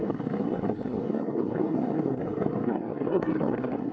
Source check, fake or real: fake